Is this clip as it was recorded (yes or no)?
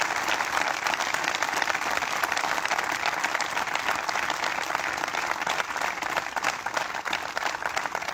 yes